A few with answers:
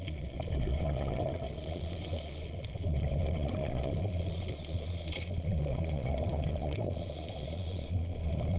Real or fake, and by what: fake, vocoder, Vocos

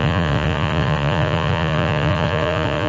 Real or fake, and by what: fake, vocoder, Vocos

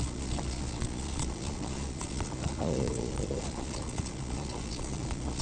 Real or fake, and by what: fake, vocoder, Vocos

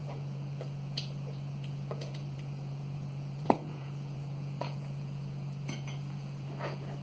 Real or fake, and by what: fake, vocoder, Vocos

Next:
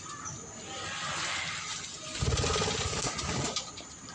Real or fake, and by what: real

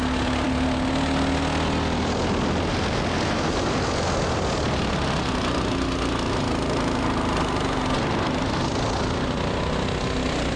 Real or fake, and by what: real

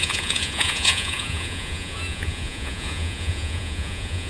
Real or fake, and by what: fake, vocoder, Vocos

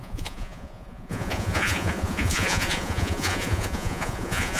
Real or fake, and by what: fake, vocoder, Vocos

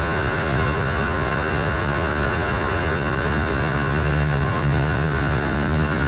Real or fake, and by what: fake, vocoder, Vocos